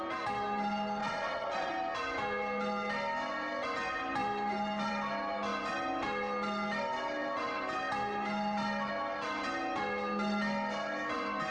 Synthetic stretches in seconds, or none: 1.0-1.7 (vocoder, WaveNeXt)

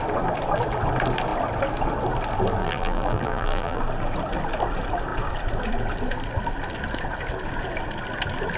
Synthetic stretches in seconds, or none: 2.6-3.8 (vocoder, BigVGAN v2)

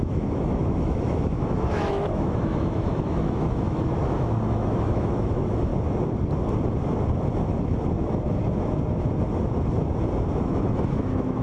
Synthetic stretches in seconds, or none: 0.0-5.7 (autoencoder, DAC-VAE); 10.4-11.4

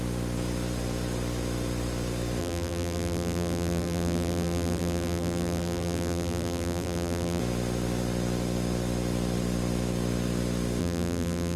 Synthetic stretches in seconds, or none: 2.4-7.4 (vocoder, BigVGAN v2); 10.8-11.6

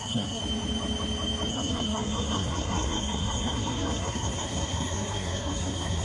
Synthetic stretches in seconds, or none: 0.0-0.4 (codec, SNAC); 1.5-6.0

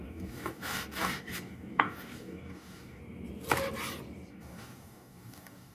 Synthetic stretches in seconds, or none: 0.0-3.0 (codec, DAC); 4.3-5.7

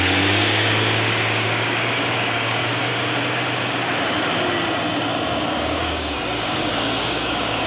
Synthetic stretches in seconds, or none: 0.0-2.9 (codec, DAC); 5.5-7.7